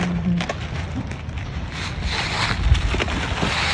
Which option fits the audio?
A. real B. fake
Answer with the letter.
A